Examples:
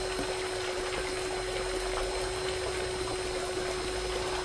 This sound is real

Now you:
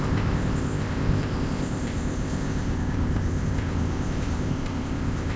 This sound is fake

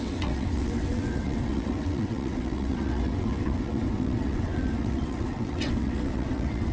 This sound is fake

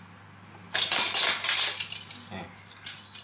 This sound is real